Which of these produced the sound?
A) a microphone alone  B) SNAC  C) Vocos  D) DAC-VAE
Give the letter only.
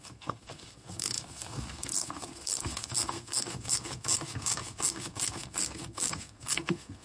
B